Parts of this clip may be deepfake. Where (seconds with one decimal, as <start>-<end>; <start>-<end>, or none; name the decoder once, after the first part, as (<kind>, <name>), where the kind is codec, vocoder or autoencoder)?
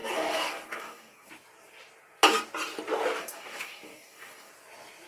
0.0-1.3 (codec, DAC); 3.2-4.5